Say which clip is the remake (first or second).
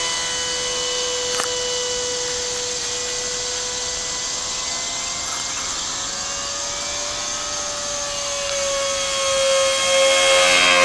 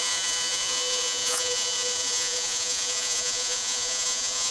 second